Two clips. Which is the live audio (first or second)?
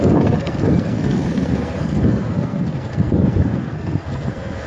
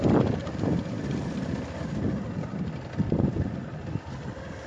second